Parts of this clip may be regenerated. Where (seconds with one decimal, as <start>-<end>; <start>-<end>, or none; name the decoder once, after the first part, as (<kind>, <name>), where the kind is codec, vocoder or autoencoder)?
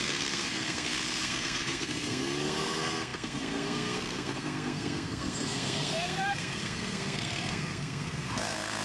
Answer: 0.0-8.8 (codec, SNAC)